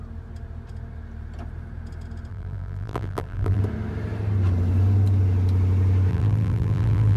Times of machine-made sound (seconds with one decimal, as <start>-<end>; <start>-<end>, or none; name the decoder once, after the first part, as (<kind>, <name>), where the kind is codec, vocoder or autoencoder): 2.3-3.6 (vocoder, BigVGAN v2); 6.1-7.2